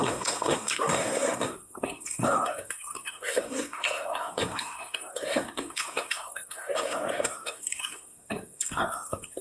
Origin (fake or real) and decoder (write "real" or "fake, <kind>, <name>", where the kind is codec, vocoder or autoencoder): fake, codec, SNAC